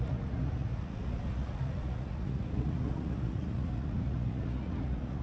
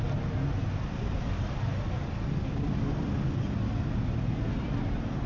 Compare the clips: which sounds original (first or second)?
second